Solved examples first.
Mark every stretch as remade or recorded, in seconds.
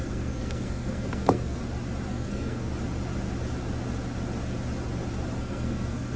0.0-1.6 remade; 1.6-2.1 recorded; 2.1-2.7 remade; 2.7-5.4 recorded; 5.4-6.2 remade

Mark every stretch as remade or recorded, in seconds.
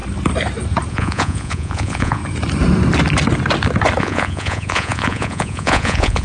0.0-0.9 recorded; 0.9-2.2 remade; 2.2-4.0 recorded; 4.0-6.2 remade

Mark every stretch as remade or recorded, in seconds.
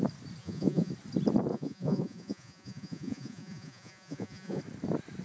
0.0-0.4 recorded; 0.4-0.9 remade; 0.9-1.5 recorded; 1.5-4.6 remade; 4.6-5.2 recorded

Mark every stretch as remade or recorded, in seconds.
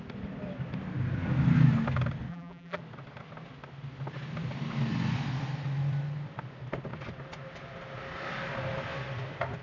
0.0-2.3 recorded; 2.3-2.8 remade; 2.8-9.6 recorded